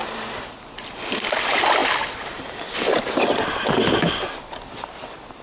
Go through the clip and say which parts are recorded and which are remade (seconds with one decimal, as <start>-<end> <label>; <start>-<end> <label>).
0.0-1.0 remade; 1.0-5.4 recorded